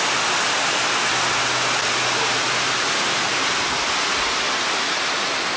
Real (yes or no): yes